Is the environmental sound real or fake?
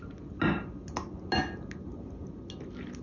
real